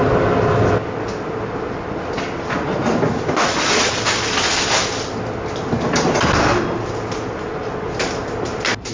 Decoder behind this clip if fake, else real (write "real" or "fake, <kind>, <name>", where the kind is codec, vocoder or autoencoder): real